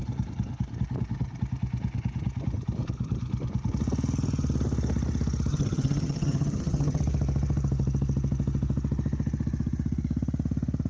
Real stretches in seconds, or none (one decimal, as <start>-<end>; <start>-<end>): 0.0-5.5; 7.0-10.9